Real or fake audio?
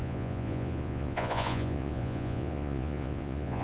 fake